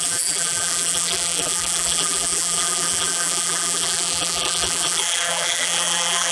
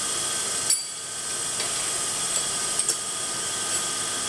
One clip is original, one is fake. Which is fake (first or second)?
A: first